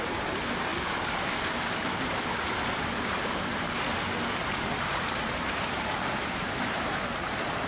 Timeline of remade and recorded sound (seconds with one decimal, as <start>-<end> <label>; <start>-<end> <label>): 0.0-0.7 remade; 0.7-1.5 recorded; 1.5-7.7 remade